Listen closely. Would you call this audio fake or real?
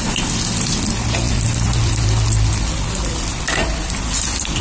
real